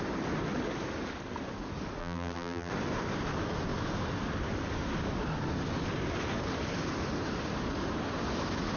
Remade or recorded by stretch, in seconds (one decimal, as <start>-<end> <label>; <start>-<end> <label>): 0.0-2.0 recorded; 2.0-2.7 remade; 2.7-8.8 recorded